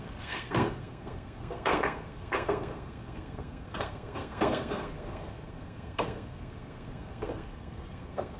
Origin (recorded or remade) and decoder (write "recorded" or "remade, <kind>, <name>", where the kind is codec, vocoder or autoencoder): remade, codec, SNAC